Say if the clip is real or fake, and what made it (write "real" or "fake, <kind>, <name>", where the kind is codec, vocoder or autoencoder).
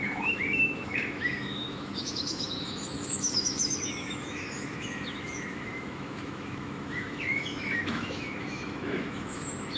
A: fake, autoencoder, DAC-VAE